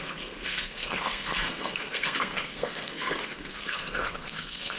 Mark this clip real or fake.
fake